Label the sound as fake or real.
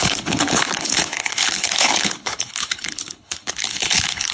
fake